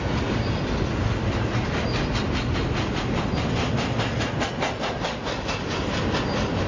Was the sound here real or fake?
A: real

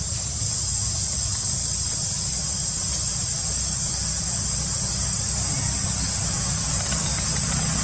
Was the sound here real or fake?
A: real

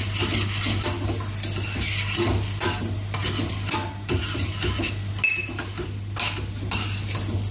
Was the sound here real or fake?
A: real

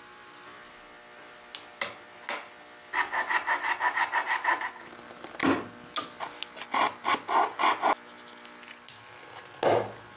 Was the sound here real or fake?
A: real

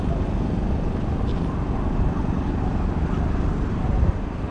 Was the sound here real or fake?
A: real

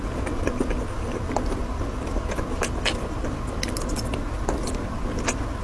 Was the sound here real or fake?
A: real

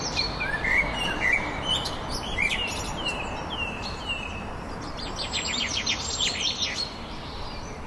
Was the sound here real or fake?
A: fake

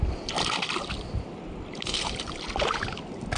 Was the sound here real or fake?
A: real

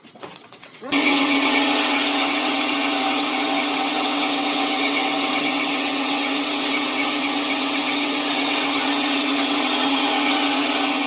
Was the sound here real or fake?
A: fake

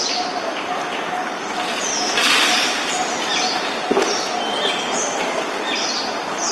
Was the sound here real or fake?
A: real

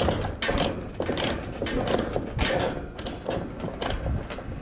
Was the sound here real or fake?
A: real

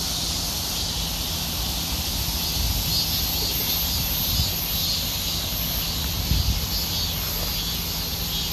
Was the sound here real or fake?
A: real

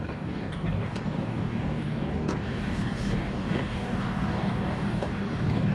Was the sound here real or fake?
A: fake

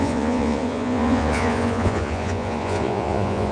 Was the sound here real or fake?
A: fake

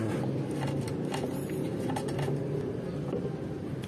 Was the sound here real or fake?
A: real